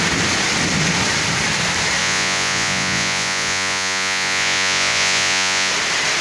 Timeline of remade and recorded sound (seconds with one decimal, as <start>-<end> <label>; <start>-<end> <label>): 0.0-2.0 recorded; 2.0-5.7 remade; 5.7-6.2 recorded